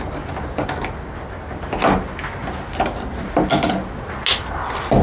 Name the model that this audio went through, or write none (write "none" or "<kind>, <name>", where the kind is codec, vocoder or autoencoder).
none